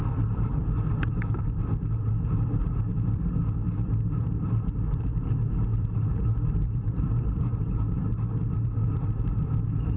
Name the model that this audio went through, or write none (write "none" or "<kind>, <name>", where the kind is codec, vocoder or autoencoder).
vocoder, BigVGAN v2